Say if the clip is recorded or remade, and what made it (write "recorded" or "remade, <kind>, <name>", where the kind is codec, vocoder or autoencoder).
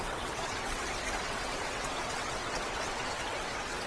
remade, vocoder, WaveNeXt